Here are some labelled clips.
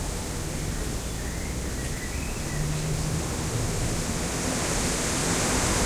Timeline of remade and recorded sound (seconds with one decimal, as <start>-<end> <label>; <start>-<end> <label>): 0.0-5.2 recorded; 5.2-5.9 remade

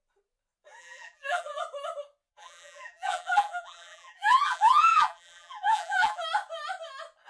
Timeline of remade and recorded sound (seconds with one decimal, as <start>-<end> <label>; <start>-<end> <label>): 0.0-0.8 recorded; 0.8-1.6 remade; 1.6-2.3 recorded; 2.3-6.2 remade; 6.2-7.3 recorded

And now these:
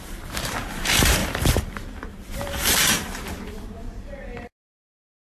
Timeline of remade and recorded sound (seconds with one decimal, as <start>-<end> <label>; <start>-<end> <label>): 0.0-5.2 remade

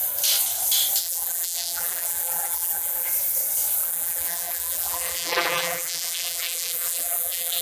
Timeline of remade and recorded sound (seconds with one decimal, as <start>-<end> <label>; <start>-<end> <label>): 0.0-1.0 recorded; 1.0-3.1 remade; 3.1-3.8 recorded; 3.8-7.6 remade